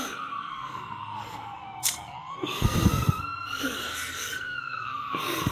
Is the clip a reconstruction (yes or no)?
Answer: yes